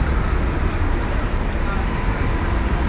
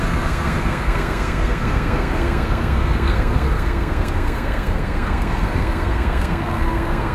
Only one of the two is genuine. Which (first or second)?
first